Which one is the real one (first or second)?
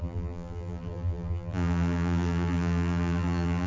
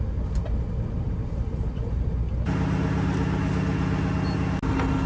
second